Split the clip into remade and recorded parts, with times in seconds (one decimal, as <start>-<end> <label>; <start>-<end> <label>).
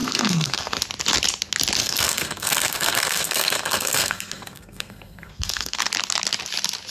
0.0-0.8 remade; 0.8-1.8 recorded; 1.8-5.9 remade; 5.9-6.9 recorded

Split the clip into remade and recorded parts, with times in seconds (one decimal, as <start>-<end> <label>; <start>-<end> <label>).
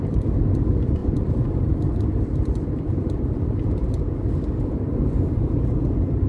0.0-6.3 recorded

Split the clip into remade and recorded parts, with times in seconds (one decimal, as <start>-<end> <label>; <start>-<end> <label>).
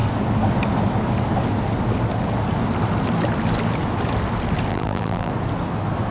0.0-4.7 recorded; 4.7-5.3 remade; 5.3-6.1 recorded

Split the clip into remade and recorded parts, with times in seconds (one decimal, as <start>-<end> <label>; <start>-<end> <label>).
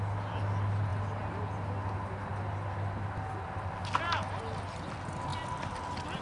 0.0-6.2 recorded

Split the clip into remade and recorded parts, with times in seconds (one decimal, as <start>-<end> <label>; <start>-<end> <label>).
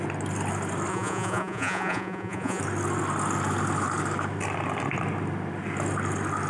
0.0-0.9 recorded; 0.9-2.6 remade; 2.6-6.5 recorded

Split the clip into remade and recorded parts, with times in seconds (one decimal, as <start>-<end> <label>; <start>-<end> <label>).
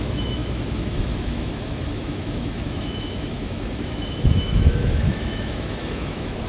0.0-6.5 remade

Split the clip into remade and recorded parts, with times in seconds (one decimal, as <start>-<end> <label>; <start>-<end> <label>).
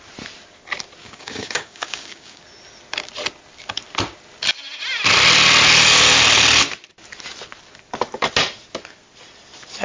0.0-1.0 recorded; 1.0-2.4 remade; 2.4-9.8 recorded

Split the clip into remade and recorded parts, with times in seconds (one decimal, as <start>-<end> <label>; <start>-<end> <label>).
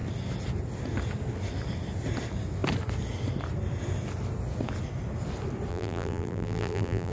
0.0-5.7 recorded; 5.7-7.1 remade